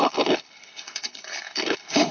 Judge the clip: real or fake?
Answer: fake